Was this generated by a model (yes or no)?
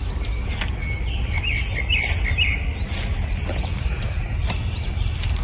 no